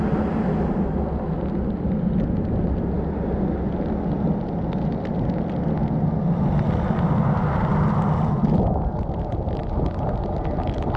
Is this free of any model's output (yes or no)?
yes